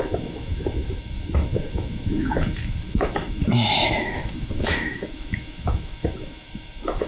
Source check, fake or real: fake